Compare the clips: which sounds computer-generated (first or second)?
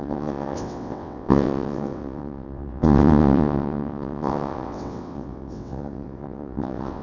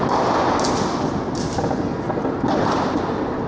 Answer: first